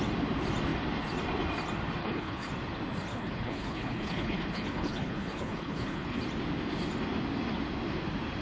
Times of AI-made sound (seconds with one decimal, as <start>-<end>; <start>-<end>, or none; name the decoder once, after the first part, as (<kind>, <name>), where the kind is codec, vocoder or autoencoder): 2.0-2.5 (codec, HILCodec); 3.1-6.2